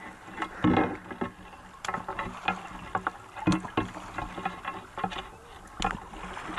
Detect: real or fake real